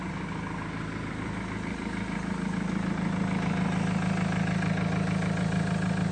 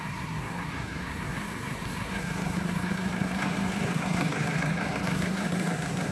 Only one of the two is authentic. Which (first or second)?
first